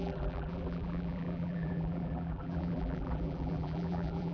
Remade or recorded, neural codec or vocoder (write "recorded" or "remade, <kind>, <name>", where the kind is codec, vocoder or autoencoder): remade, vocoder, BigVGAN v2